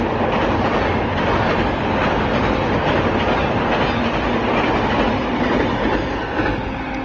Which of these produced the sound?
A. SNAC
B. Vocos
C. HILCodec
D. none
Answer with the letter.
D